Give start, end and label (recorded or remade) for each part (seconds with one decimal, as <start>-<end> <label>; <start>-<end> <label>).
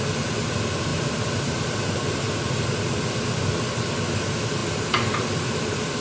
0.0-0.9 recorded; 0.9-2.9 remade; 2.9-6.0 recorded